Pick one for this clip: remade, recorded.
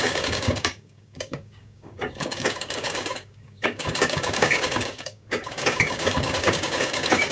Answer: remade